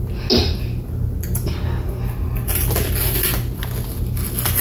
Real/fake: real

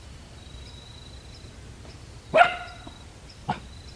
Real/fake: real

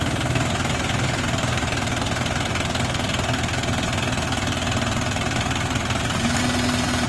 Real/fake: real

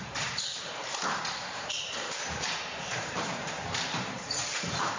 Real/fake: fake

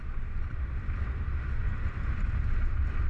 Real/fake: real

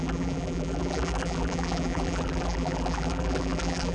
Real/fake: fake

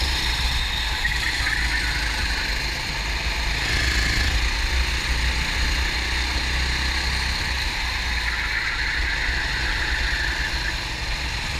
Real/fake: real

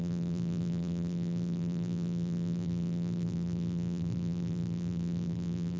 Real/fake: fake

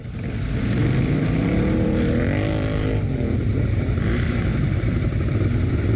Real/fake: fake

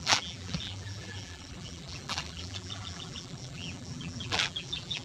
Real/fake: fake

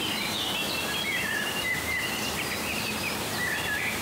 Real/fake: fake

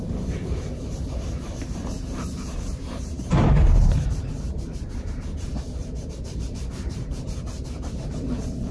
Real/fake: fake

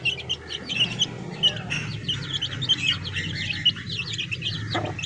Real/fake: real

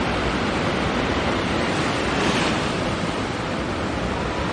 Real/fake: fake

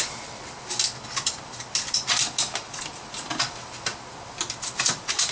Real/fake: real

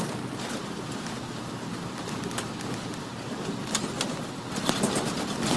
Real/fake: real